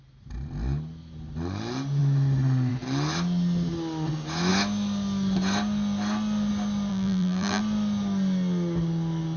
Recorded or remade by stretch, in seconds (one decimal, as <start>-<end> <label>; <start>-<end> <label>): 0.0-6.9 recorded; 6.9-7.6 remade; 7.6-9.4 recorded